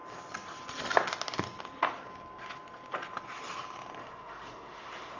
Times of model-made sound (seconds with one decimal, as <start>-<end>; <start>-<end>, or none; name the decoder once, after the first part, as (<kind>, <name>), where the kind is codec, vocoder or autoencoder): 4.0-5.2 (autoencoder, DAC-VAE)